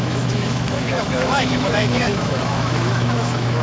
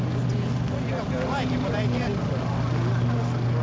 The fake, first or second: first